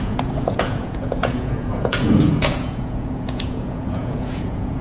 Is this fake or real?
fake